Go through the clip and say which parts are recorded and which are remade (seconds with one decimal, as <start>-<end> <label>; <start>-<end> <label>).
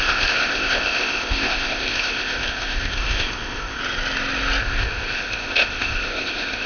0.0-3.8 remade; 3.8-4.6 recorded; 4.6-6.7 remade